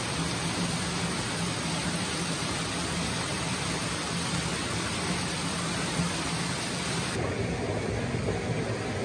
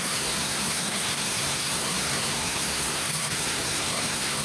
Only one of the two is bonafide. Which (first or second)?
first